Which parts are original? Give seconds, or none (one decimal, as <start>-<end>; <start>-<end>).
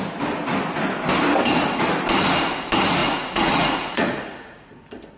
0.0-3.0; 4.8-5.2